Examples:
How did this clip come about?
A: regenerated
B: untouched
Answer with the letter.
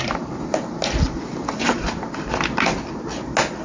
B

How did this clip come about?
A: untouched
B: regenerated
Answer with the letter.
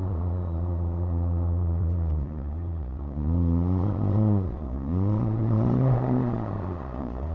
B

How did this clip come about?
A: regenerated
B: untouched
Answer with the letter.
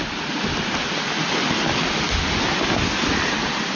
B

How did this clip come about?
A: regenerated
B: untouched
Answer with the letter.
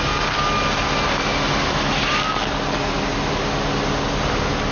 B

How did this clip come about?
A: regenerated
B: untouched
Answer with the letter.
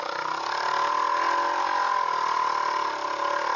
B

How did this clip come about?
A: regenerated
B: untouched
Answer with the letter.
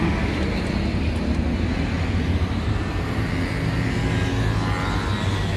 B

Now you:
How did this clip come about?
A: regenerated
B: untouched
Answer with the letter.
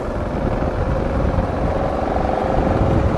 B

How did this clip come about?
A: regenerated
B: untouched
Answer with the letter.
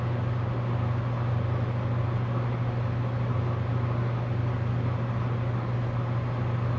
B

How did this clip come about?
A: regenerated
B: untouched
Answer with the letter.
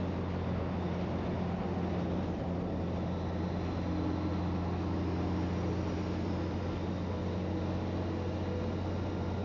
B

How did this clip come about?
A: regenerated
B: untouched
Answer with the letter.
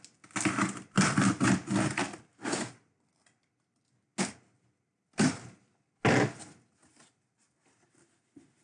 B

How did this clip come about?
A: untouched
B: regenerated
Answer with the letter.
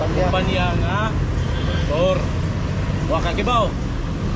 A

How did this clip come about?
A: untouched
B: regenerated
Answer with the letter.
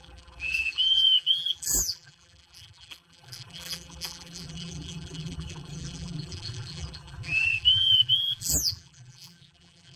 B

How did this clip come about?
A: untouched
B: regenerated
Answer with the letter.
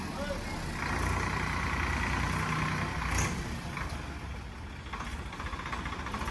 A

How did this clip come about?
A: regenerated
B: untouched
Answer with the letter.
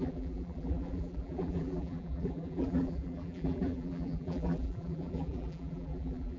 A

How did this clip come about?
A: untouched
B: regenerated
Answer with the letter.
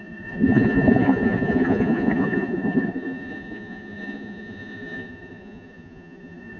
B